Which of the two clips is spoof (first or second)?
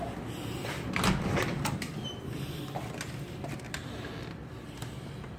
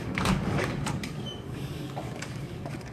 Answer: second